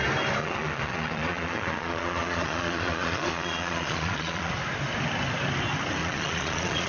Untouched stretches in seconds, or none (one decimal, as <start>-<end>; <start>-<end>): 0.0-0.4; 4.5-6.0